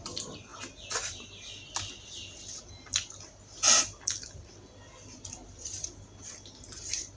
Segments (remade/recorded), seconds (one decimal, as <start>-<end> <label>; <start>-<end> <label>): 0.0-7.2 recorded

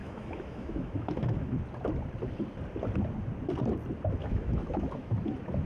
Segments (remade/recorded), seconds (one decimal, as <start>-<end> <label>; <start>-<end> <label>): 0.0-1.5 remade; 1.5-4.2 recorded; 4.2-5.1 remade; 5.1-5.7 recorded

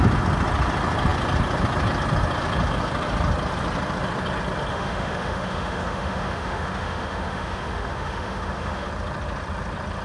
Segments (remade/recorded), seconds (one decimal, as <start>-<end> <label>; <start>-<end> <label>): 0.0-4.7 recorded; 4.7-8.9 remade; 8.9-10.0 recorded

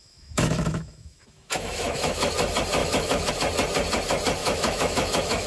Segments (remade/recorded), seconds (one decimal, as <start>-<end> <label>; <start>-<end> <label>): 0.0-2.3 remade; 2.3-2.8 recorded; 2.8-3.3 remade; 3.3-4.4 recorded; 4.4-5.5 remade

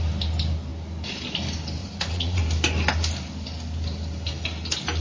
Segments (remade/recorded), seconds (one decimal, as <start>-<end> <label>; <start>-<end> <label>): 0.0-1.8 recorded; 1.8-2.4 remade; 2.4-5.0 recorded

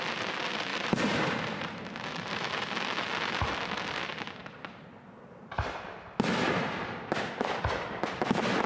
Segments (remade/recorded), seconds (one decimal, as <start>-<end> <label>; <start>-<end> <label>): 0.0-0.7 recorded; 0.7-2.5 remade; 2.5-8.7 recorded

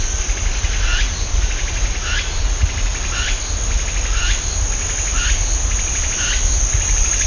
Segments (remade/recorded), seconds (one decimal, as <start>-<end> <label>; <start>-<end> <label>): 0.0-7.3 recorded